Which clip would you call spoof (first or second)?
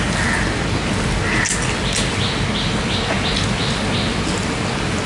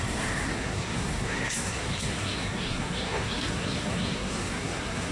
second